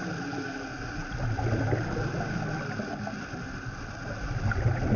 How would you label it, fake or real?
real